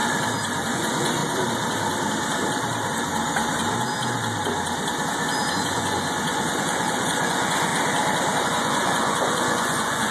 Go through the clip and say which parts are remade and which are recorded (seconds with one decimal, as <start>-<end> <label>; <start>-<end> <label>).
0.0-0.7 recorded; 0.7-1.2 remade; 1.2-5.5 recorded; 5.5-7.7 remade; 7.7-8.4 recorded; 8.4-10.1 remade

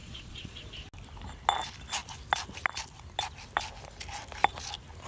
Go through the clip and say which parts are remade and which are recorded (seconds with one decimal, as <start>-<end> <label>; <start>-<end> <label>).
0.0-0.6 remade; 0.6-5.1 recorded

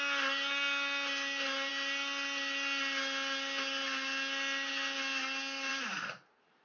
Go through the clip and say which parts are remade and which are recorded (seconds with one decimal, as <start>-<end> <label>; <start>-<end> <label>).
0.0-6.6 recorded

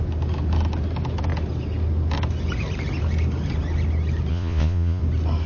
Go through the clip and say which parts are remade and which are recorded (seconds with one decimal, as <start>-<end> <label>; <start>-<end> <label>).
0.0-4.3 recorded; 4.3-5.0 remade; 5.0-5.5 recorded